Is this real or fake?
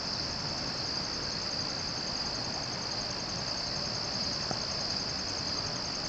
real